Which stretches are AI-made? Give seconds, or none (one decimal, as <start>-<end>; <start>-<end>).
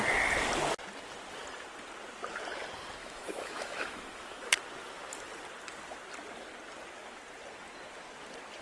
3.0-4.6